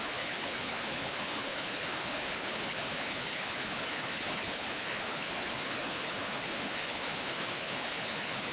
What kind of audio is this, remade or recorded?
remade